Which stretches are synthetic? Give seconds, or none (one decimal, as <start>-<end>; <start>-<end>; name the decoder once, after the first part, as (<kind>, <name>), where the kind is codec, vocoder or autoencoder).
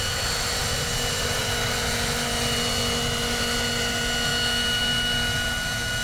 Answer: none